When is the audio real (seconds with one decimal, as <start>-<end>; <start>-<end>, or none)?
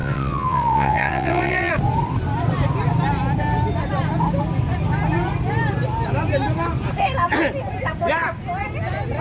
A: 1.7-9.2